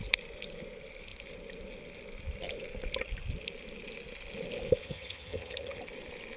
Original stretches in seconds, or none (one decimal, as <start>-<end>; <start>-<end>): 0.0-4.8; 5.8-6.4